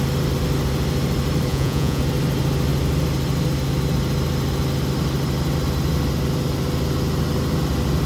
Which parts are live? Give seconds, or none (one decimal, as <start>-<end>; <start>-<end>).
0.0-1.5; 2.0-8.1

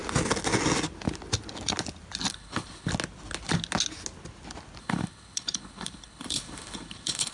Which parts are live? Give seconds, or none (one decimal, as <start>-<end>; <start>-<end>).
0.0-2.3; 2.9-4.8

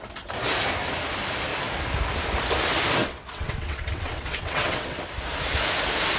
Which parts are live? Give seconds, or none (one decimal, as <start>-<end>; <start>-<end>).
0.0-3.0; 5.0-6.2

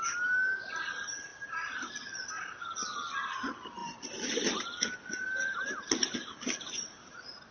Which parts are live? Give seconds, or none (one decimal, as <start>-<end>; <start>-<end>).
0.0-1.3; 2.3-3.8; 4.6-7.5